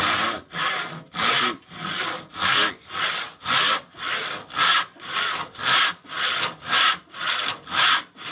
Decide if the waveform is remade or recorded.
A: recorded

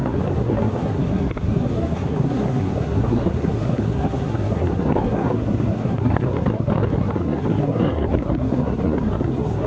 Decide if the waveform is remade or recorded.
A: remade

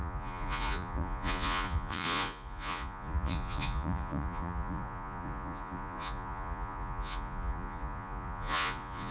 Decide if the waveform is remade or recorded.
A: remade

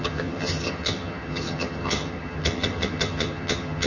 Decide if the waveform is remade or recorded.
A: remade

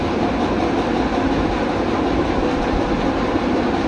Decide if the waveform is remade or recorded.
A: recorded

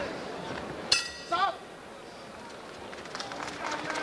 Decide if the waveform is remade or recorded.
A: recorded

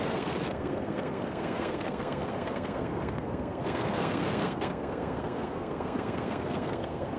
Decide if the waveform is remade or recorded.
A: remade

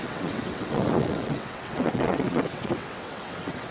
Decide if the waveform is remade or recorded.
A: remade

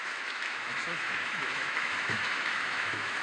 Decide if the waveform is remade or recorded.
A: remade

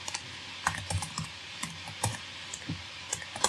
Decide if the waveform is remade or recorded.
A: recorded